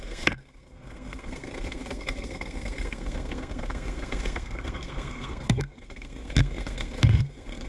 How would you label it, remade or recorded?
remade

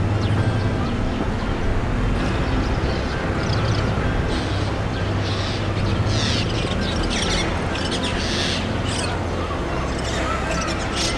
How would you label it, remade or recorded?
recorded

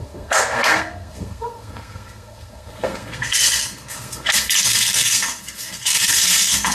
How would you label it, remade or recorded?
remade